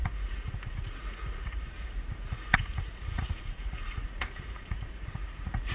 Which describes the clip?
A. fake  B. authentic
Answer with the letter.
A